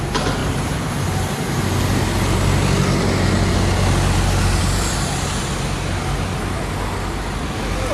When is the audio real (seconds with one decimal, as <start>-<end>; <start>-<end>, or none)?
0.0-7.9